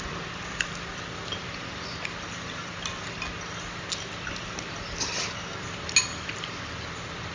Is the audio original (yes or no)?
yes